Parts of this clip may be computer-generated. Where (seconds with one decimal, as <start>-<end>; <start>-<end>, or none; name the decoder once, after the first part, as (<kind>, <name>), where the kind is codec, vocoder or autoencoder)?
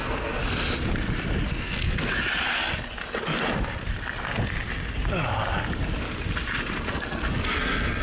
0.0-0.4 (codec, SNAC); 1.6-2.1; 6.9-8.0